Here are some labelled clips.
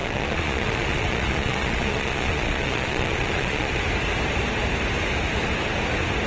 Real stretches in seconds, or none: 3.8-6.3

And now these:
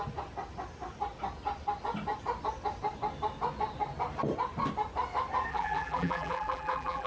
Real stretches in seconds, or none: 0.0-5.5

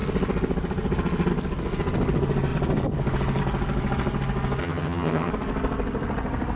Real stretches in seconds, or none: 0.0-4.6; 5.3-6.6